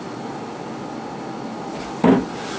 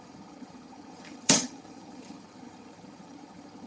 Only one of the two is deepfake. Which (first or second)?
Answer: second